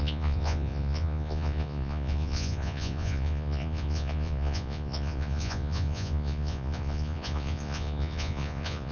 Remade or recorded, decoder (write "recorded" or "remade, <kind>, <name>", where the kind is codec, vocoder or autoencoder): remade, vocoder, Vocos